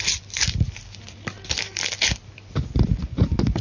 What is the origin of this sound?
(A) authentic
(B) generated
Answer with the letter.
B